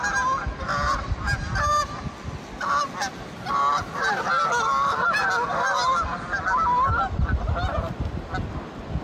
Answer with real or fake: real